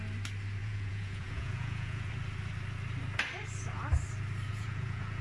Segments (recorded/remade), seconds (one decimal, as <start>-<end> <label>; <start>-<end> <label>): 0.0-0.6 recorded; 0.6-2.1 remade; 2.1-4.5 recorded; 4.5-5.2 remade